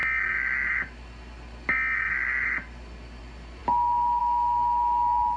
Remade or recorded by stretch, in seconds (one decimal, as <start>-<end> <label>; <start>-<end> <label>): 0.0-5.4 recorded